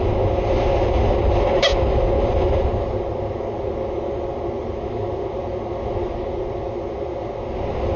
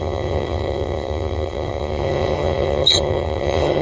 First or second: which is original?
first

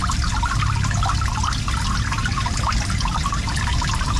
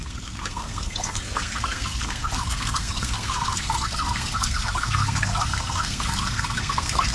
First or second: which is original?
first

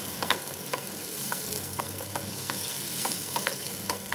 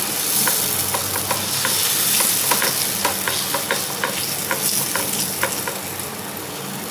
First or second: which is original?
second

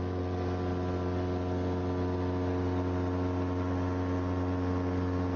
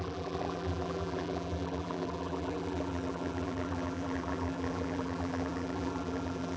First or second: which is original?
first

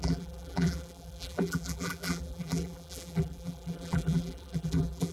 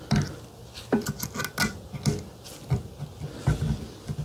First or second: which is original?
second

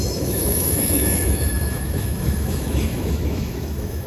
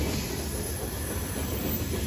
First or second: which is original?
second